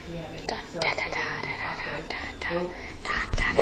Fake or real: fake